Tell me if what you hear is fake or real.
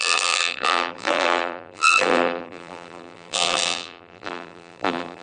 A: fake